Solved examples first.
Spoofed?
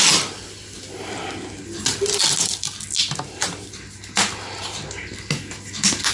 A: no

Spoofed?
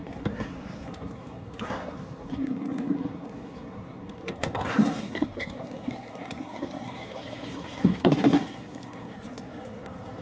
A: yes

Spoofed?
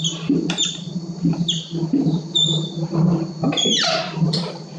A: no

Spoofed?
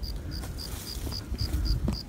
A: no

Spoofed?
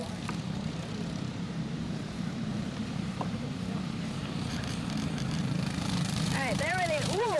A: yes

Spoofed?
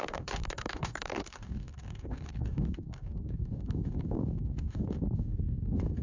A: yes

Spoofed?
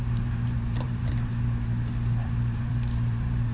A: yes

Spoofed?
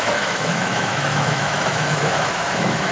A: yes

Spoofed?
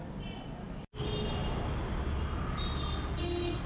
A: no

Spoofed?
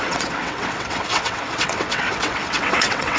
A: yes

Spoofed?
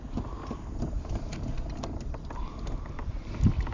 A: no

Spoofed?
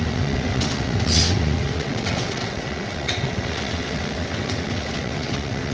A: yes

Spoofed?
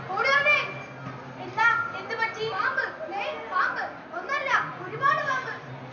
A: no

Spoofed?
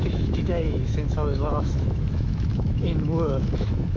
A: yes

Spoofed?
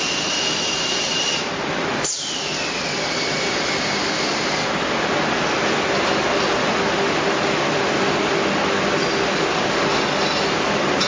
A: no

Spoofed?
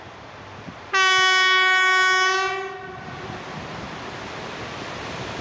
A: no